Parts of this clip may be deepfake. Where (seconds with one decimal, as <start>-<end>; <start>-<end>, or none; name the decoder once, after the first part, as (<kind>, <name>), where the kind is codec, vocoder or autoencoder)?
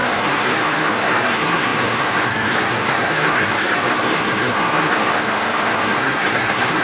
0.0-6.8 (codec, SNAC)